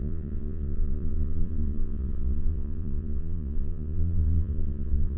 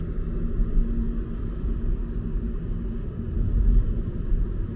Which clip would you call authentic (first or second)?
second